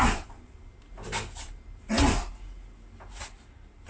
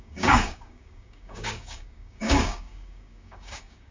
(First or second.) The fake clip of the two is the second